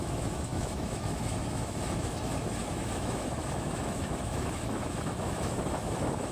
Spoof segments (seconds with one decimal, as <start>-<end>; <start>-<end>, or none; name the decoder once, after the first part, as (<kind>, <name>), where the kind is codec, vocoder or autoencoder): 0.0-6.3 (autoencoder, DAC-VAE)